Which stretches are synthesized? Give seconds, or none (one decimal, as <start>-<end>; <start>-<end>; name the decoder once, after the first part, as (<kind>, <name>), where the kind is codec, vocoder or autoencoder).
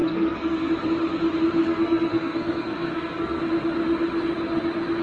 0.0-0.7 (codec, SNAC); 1.6-3.4